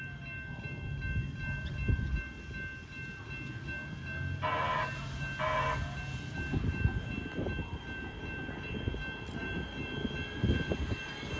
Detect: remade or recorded recorded